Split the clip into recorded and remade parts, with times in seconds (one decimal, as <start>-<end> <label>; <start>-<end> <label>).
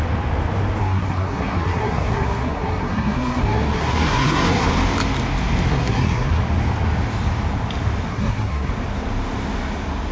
0.0-0.8 recorded; 0.8-4.7 remade; 4.7-5.7 recorded; 5.7-6.4 remade; 6.4-8.1 recorded; 8.1-8.7 remade; 8.7-10.1 recorded